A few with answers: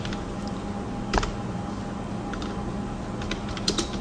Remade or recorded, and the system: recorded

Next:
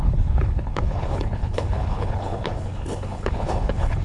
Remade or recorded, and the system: remade, codec, HILCodec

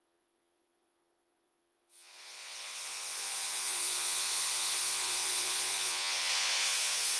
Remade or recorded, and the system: remade, vocoder, Vocos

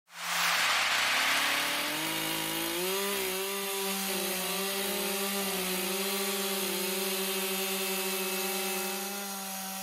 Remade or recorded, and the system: recorded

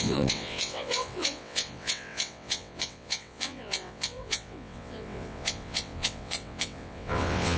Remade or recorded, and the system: remade, vocoder, WaveNeXt